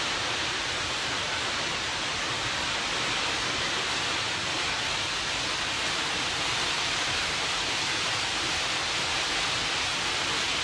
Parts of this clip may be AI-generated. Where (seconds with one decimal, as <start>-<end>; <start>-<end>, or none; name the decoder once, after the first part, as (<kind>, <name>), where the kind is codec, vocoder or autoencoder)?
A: 0.0-1.9 (vocoder, BigVGAN v2); 6.7-8.8; 10.2-10.6

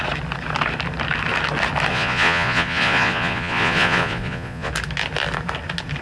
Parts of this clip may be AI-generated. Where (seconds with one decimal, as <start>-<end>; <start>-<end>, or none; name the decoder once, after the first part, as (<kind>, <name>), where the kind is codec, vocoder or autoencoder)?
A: 1.9-4.7 (vocoder, Vocos)

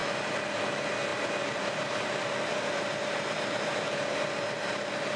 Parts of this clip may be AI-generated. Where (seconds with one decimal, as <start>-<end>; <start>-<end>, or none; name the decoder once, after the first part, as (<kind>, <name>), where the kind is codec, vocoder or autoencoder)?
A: none